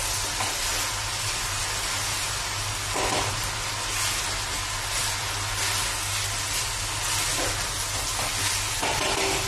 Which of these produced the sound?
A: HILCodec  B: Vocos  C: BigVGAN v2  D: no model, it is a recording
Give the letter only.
D